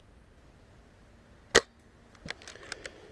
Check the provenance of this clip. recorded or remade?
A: recorded